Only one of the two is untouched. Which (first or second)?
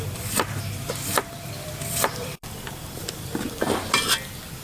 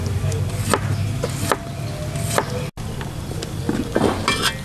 second